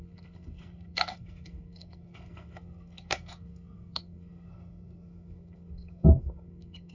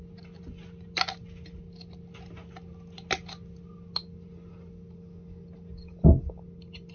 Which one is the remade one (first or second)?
first